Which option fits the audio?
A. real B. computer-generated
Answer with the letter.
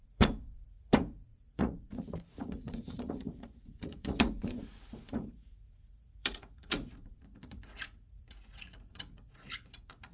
B